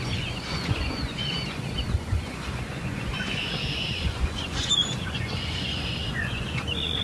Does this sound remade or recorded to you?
remade